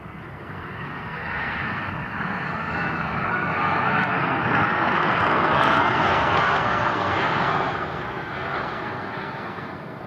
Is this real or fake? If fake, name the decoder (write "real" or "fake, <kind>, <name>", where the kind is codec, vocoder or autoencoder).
fake, codec, SNAC